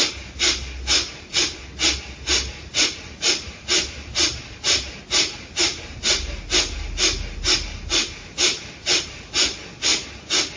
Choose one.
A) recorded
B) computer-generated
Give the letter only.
A